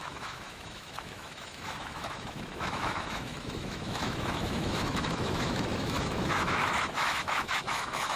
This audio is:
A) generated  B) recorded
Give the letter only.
A